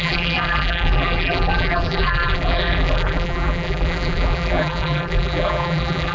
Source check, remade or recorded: remade